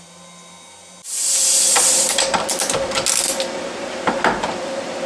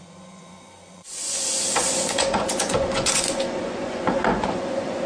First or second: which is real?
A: first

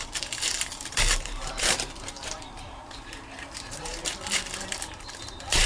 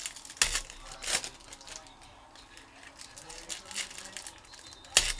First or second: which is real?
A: second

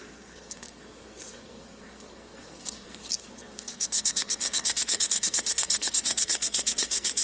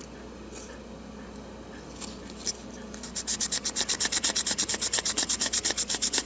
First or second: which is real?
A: second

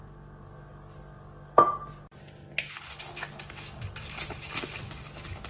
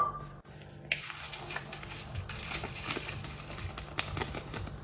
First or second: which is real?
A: first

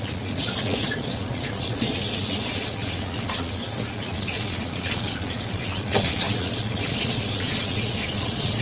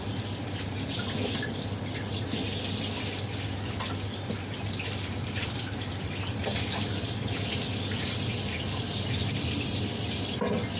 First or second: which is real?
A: second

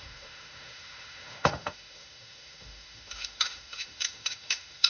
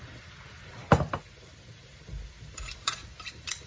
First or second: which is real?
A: second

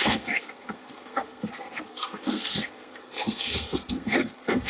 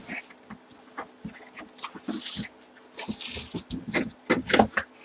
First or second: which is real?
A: second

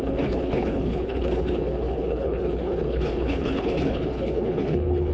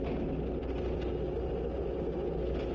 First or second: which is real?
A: second